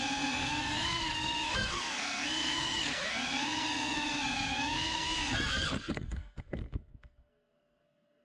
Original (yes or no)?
no